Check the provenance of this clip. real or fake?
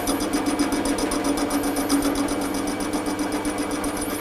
real